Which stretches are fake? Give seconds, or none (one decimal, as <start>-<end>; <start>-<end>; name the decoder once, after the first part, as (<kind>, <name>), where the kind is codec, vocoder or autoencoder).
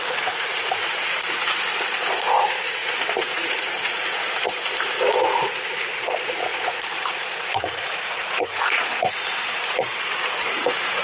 0.0-11.0 (vocoder, Vocos)